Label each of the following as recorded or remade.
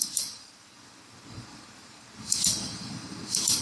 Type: remade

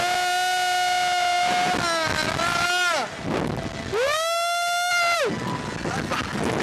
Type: recorded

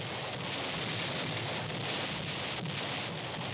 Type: recorded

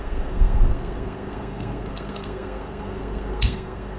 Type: remade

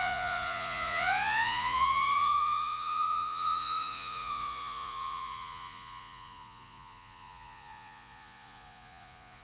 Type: remade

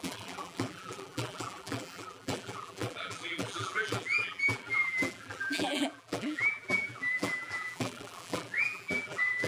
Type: remade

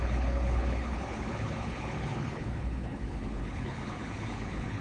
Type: remade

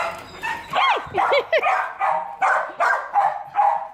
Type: recorded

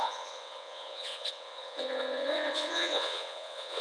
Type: remade